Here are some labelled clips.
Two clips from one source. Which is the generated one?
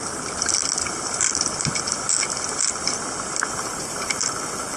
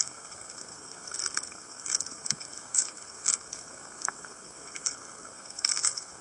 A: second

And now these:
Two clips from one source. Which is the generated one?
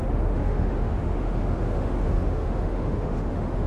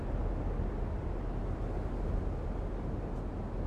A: first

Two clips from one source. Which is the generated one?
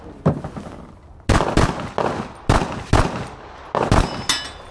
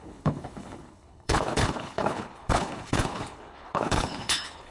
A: second